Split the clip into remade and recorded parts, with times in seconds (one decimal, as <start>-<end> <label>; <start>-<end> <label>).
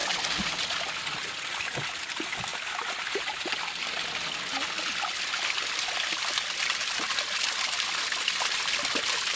0.0-9.4 recorded